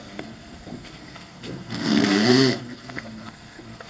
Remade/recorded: remade